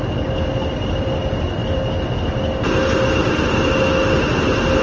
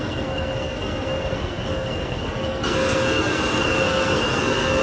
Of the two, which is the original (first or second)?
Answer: first